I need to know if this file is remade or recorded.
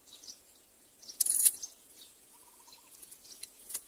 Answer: remade